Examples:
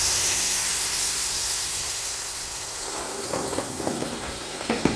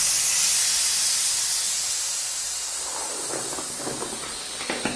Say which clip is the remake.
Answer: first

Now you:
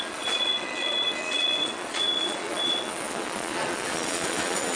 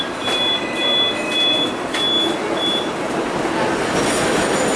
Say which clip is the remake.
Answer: first